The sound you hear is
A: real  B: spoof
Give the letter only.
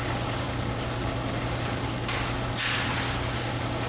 A